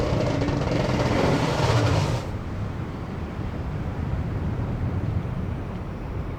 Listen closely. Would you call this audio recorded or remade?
remade